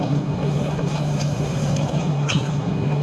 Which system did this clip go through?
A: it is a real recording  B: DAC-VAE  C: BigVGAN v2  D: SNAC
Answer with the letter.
D